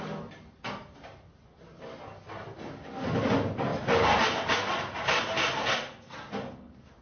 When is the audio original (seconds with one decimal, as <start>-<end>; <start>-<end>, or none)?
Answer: 0.0-7.0